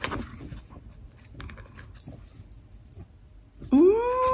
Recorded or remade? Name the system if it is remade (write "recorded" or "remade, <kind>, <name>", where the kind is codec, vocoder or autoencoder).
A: recorded